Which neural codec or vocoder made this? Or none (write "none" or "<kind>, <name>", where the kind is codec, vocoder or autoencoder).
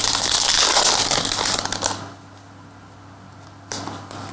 none